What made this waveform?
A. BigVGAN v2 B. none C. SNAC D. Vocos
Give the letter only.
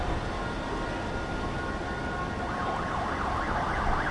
B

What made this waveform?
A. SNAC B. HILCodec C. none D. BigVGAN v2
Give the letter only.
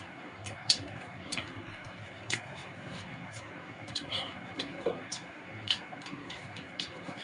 A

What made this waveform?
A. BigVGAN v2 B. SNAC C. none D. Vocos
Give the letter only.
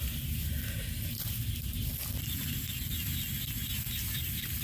C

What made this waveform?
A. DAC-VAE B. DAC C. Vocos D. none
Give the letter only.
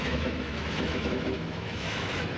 A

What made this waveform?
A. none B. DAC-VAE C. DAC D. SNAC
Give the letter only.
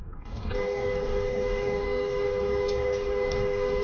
C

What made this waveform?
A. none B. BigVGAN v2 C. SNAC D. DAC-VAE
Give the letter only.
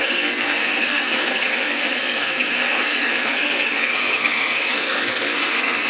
C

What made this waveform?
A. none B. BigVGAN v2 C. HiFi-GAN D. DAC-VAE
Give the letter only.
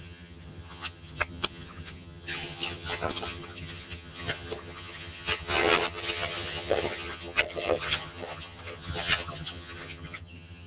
C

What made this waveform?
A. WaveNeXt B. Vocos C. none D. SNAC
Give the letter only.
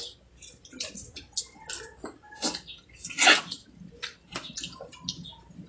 C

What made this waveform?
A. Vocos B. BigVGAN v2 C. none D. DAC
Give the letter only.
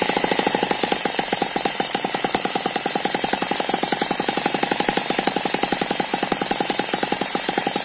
B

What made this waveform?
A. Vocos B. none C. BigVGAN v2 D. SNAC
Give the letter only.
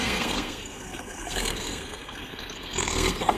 D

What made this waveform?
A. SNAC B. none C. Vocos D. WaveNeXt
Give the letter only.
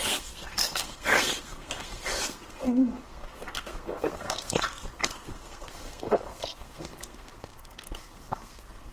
A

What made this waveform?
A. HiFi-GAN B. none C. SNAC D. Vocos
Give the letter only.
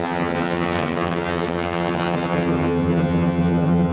A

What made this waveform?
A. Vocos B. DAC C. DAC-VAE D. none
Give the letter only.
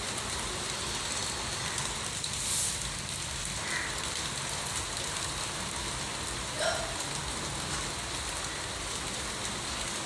D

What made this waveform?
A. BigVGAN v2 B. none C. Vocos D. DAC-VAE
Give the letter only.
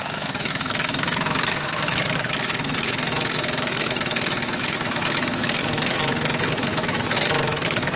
D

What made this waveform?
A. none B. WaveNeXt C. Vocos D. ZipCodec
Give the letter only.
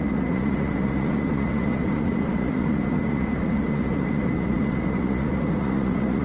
C